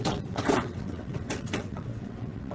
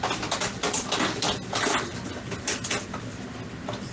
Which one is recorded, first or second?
second